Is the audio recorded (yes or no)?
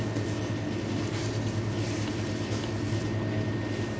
yes